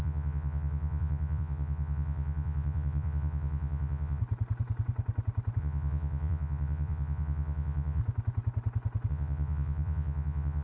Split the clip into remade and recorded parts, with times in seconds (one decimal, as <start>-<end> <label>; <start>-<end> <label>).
0.0-4.2 remade; 4.2-5.6 recorded; 5.6-8.0 remade; 8.0-9.1 recorded; 9.1-10.6 remade